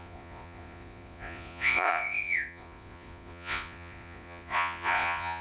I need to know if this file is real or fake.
fake